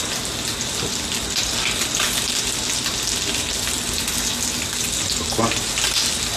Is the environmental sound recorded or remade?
recorded